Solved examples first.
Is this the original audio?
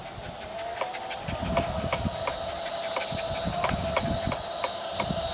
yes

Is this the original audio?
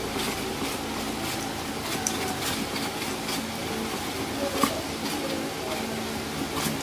yes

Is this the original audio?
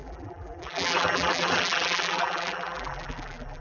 no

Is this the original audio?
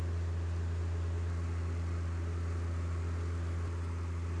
yes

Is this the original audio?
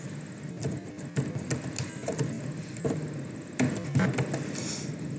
yes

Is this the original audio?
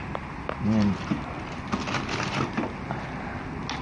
yes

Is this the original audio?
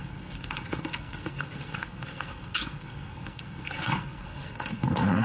no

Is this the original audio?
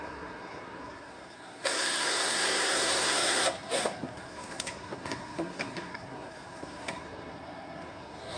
no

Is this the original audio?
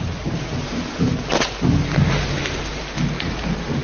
yes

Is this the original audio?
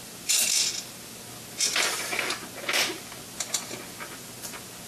yes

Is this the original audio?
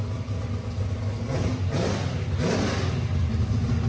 yes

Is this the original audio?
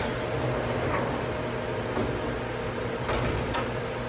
yes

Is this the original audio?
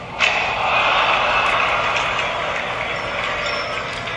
yes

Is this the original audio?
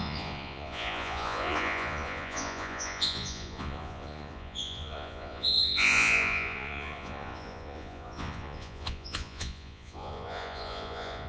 no